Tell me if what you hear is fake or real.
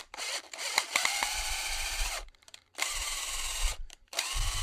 fake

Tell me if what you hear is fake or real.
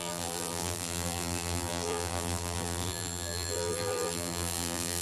fake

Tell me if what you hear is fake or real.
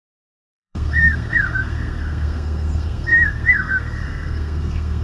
fake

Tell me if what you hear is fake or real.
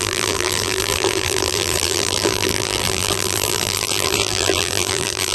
fake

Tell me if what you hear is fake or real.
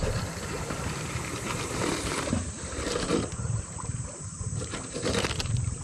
fake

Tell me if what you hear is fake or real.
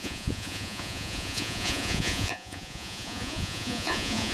fake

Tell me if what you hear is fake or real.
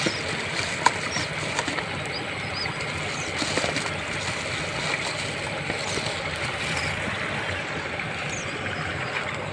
real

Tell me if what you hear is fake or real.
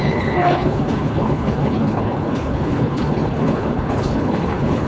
fake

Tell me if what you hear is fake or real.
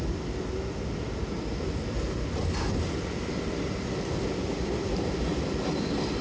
real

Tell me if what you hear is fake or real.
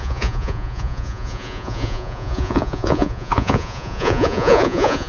fake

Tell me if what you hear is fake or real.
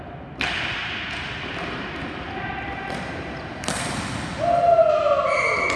real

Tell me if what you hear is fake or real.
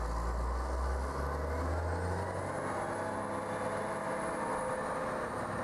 real